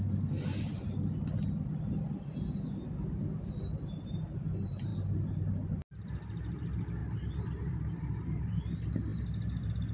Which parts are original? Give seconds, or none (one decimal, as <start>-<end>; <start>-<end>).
0.0-9.9